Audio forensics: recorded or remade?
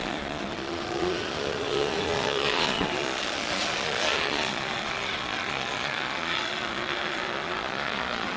remade